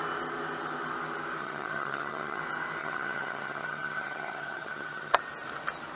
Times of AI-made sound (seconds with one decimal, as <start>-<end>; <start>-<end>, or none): 1.4-2.4; 2.8-5.2